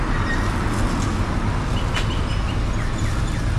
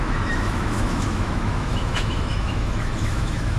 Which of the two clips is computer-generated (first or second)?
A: second